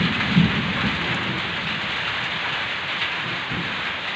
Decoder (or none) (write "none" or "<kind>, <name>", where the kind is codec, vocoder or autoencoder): none